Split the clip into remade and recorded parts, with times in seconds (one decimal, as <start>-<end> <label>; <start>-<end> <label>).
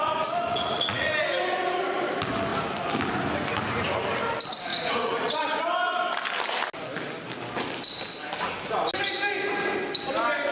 0.0-0.5 recorded; 0.5-1.1 remade; 1.1-4.7 recorded; 4.7-5.6 remade; 5.6-10.5 recorded